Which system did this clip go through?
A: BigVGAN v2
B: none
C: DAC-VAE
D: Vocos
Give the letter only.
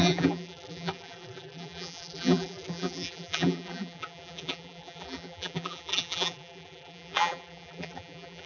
A